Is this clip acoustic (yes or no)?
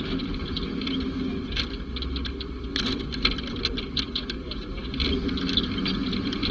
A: no